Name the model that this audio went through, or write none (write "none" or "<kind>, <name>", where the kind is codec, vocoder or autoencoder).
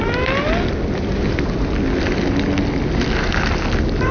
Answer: none